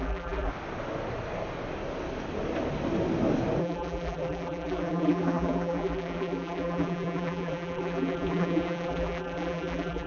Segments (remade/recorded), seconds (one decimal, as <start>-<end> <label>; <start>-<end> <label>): 0.0-0.5 remade; 0.5-3.6 recorded; 3.6-10.1 remade